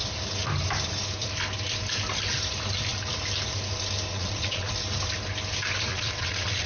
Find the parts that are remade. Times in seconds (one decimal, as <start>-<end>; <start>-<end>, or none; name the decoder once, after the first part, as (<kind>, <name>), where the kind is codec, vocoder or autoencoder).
4.1-4.7 (vocoder, Vocos); 5.9-6.7